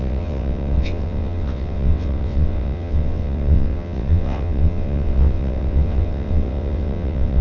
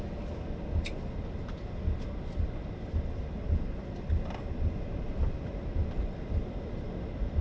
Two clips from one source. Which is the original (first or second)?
second